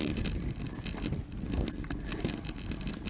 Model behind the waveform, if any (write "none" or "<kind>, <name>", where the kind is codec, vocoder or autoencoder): none